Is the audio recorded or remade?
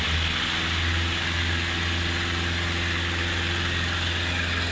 recorded